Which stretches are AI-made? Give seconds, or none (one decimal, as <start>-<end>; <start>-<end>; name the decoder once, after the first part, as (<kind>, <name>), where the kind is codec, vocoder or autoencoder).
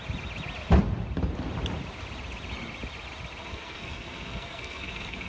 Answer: 3.4-5.3 (codec, SNAC)